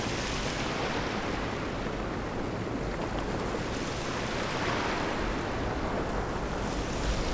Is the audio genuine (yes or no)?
yes